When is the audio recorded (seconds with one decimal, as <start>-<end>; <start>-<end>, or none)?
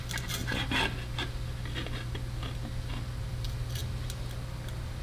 0.0-5.0